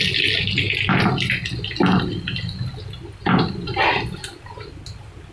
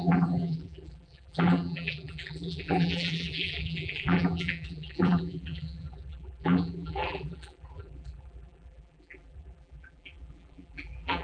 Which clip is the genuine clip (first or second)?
first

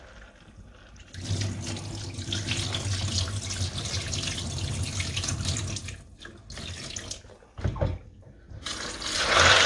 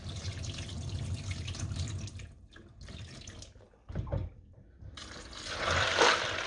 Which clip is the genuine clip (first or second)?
first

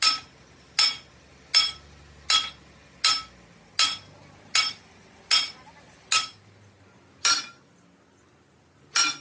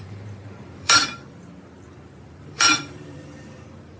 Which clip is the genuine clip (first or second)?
first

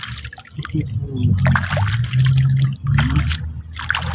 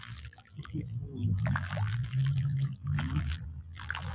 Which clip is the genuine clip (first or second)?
first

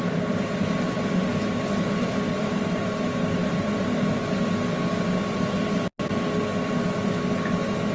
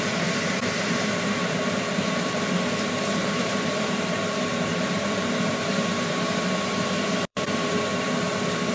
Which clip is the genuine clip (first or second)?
first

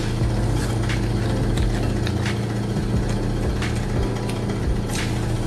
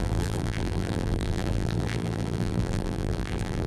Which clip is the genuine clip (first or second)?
first